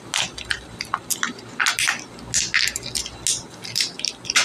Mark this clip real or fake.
real